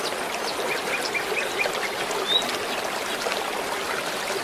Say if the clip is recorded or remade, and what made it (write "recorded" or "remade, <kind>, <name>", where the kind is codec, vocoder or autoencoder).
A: recorded